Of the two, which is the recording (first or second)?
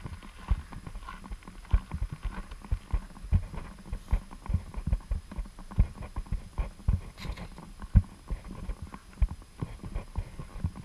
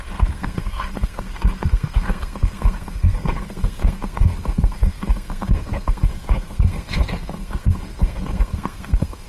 first